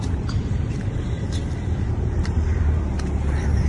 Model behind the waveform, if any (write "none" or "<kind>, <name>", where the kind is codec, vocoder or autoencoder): vocoder, BigVGAN v2